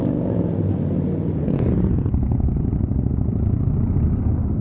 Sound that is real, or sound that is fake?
real